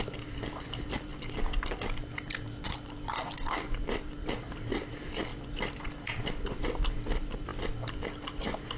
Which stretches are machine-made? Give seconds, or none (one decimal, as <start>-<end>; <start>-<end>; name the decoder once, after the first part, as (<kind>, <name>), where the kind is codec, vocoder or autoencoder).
0.0-1.1 (vocoder, BigVGAN v2); 3.2-7.5; 8.4-8.8